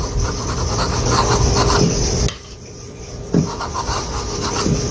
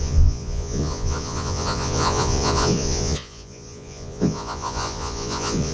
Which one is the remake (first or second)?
second